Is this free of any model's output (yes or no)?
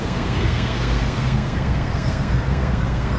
no